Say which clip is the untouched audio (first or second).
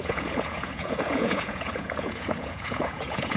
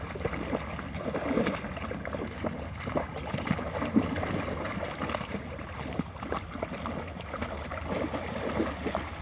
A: second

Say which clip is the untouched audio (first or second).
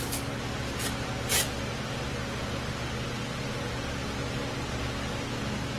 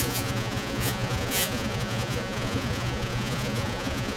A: first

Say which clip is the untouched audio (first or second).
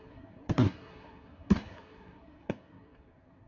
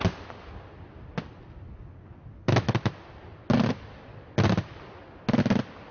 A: second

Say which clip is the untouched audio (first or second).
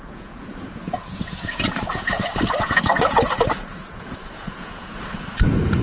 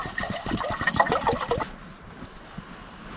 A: second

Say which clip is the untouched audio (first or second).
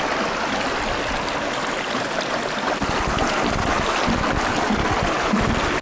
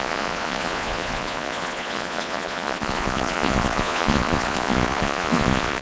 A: first